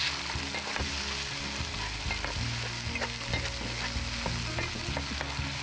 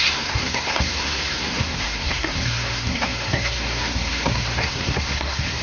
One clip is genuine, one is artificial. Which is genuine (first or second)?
first